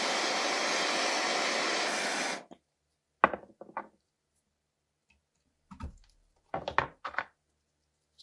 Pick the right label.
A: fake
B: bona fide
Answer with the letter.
B